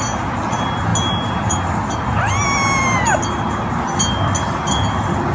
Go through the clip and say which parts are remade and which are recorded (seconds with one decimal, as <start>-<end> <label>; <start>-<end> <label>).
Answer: 0.0-5.3 recorded

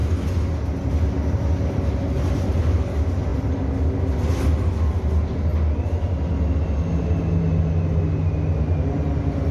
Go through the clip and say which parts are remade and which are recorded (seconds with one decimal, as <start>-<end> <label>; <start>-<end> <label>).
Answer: 0.0-9.5 recorded

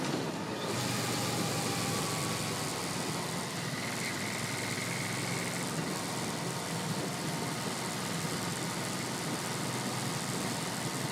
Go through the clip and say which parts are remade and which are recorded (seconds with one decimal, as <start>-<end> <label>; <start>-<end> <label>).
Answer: 0.0-11.1 recorded

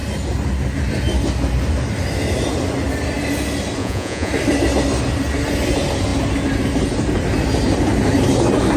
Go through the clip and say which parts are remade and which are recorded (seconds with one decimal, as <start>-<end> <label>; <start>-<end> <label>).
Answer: 0.0-3.8 recorded; 3.8-4.3 remade; 4.3-8.8 recorded

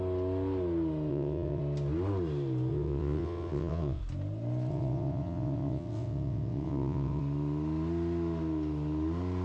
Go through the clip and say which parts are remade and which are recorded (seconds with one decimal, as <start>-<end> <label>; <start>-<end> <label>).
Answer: 0.0-1.1 recorded; 1.1-1.6 remade; 1.6-2.7 recorded; 2.7-4.0 remade; 4.0-4.7 recorded; 4.7-7.2 remade; 7.2-9.4 recorded

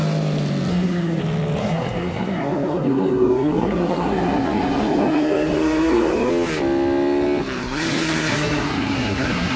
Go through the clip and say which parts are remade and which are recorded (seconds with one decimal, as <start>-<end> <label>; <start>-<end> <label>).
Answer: 0.0-0.7 recorded; 0.7-1.2 remade; 1.2-1.6 recorded; 1.6-6.3 remade; 6.3-7.6 recorded; 7.6-9.6 remade

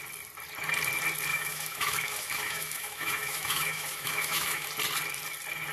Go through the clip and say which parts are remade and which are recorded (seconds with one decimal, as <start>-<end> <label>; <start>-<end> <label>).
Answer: 0.0-1.3 recorded; 1.3-4.7 remade; 4.7-5.7 recorded

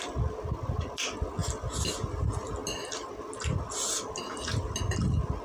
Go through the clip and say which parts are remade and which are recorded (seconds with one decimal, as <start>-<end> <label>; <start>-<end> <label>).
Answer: 0.0-5.4 recorded